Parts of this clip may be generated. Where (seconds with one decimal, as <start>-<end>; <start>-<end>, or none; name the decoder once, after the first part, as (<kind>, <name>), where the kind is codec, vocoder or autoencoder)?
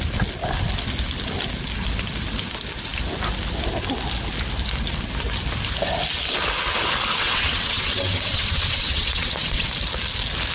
7.2-9.7 (vocoder, WaveNeXt)